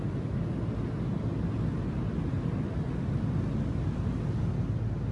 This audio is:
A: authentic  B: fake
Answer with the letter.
A